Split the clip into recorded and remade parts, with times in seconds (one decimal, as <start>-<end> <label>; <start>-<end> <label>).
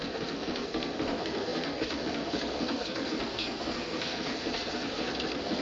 0.0-5.6 remade